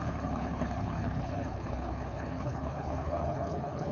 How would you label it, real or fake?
fake